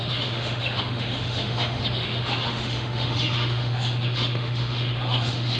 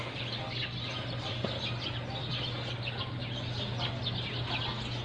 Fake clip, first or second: first